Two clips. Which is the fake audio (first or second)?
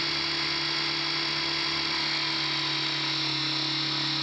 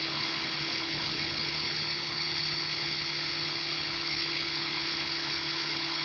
second